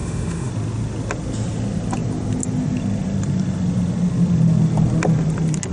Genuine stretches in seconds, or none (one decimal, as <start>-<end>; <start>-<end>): 0.5-5.7